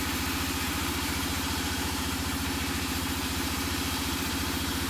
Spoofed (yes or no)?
yes